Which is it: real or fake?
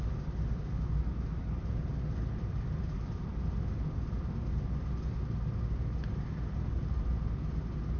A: real